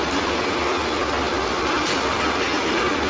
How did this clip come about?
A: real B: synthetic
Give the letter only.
A